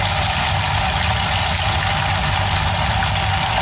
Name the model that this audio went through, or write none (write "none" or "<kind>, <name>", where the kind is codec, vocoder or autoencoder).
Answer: none